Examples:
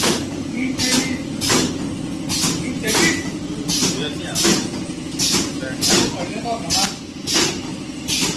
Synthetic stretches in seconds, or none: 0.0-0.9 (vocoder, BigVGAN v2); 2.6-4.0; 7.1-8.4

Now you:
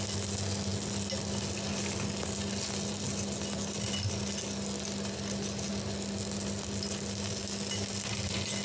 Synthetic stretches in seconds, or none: none

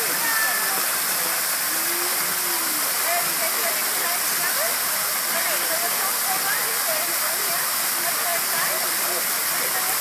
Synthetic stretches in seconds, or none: none

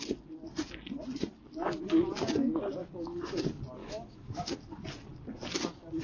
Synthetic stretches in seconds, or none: 2.8-3.3 (autoencoder, DAC-VAE); 3.8-4.5

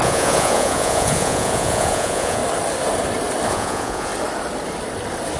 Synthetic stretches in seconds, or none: 0.0-2.4 (vocoder, Vocos); 3.5-4.1

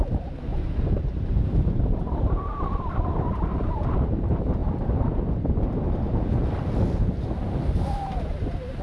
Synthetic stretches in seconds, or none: 0.5-2.5 (vocoder, BigVGAN v2)

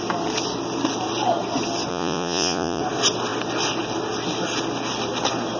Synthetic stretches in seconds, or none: 1.9-2.8 (vocoder, Vocos)

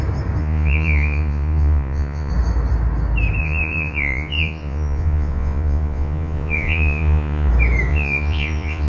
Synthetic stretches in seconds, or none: 0.4-2.3 (vocoder, Vocos); 3.4-7.5; 7.9-8.9